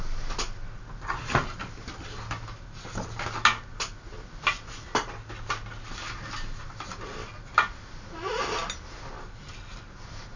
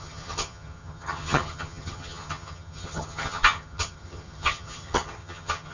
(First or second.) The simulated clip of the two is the second